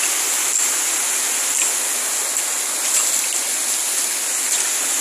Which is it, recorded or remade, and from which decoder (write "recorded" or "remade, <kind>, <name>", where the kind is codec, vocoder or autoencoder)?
recorded